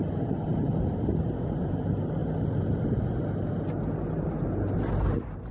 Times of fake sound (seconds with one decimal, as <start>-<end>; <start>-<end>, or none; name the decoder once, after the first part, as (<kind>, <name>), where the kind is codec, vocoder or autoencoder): none